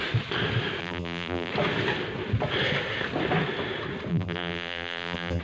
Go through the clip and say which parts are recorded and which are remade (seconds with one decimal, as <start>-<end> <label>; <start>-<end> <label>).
0.0-0.8 recorded; 0.8-1.5 remade; 1.5-4.1 recorded; 4.1-5.4 remade